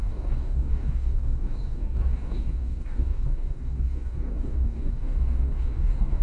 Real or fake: fake